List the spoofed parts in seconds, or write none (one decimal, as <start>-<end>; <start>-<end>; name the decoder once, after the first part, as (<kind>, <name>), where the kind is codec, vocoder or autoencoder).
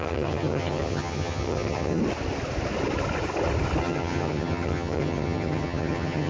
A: 0.0-2.0 (vocoder, HiFi-GAN); 3.8-6.3